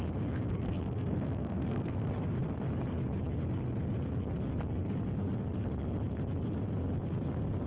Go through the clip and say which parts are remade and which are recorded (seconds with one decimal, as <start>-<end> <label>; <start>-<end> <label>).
0.0-0.4 recorded; 0.4-2.1 remade; 2.1-7.7 recorded